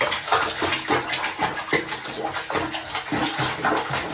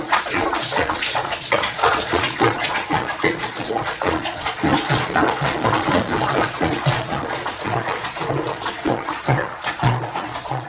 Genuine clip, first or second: first